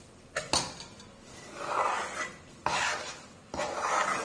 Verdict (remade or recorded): recorded